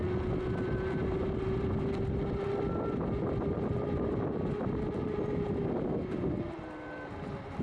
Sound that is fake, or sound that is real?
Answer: real